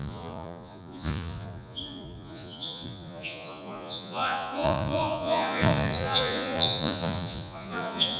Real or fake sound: fake